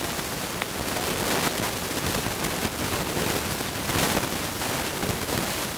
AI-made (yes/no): no